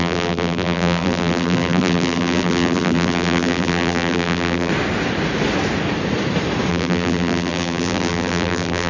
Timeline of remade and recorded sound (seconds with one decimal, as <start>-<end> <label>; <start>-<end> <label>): 0.0-4.7 remade; 4.7-6.7 recorded; 6.7-8.9 remade